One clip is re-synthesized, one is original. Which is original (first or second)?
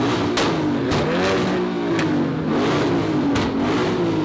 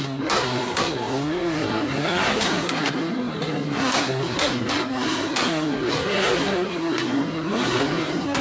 first